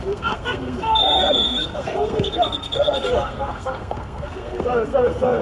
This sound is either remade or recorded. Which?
remade